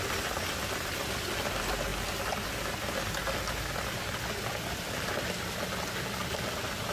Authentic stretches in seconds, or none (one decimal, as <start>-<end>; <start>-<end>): 0.0-6.9